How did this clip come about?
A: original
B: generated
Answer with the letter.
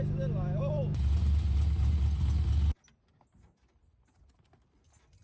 A